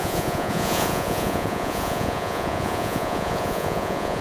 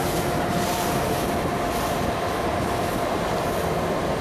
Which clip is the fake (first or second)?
first